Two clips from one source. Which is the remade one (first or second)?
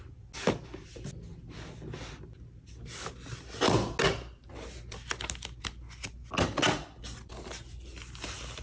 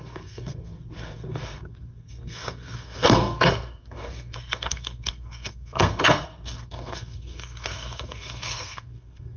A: second